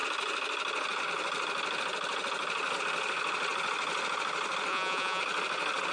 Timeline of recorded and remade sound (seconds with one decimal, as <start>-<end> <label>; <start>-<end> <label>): 0.0-4.7 recorded; 4.7-5.2 remade; 5.2-5.9 recorded